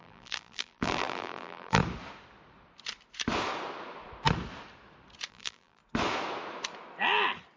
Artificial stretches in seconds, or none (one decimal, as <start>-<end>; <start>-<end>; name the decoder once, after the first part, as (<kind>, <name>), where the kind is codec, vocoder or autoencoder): 0.0-1.8 (vocoder, BigVGAN v2); 5.3-5.8